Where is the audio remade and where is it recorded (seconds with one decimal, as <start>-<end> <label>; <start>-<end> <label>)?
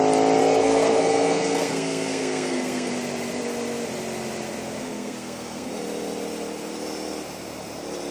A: 0.0-0.4 recorded; 0.4-2.9 remade; 2.9-4.8 recorded; 4.8-5.7 remade; 5.7-8.1 recorded